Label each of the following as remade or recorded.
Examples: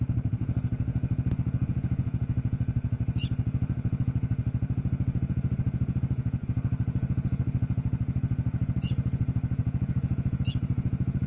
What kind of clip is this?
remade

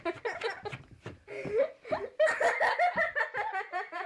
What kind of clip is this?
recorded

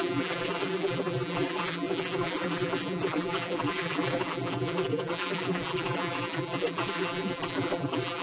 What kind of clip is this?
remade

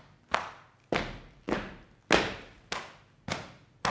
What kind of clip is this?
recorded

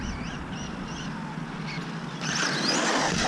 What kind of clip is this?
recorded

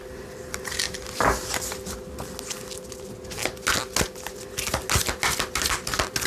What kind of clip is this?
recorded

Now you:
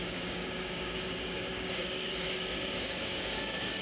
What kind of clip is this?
remade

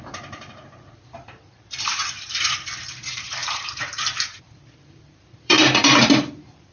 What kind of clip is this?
remade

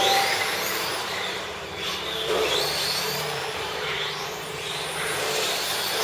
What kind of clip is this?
remade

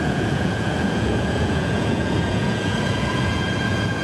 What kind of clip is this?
remade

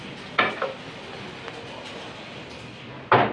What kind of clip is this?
recorded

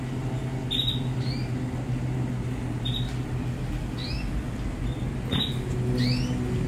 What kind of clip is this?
recorded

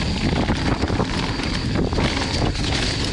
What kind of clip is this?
recorded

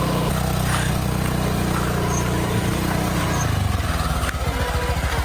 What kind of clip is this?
recorded